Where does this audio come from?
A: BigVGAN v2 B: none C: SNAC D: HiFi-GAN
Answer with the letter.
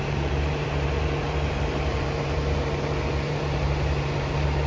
A